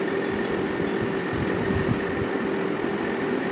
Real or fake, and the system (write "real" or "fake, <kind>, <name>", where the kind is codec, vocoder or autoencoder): real